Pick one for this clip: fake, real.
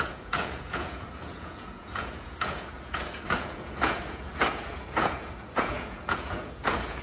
fake